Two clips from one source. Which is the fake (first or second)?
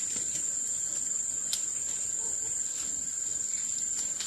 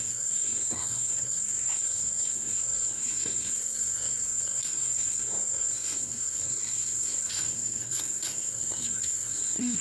second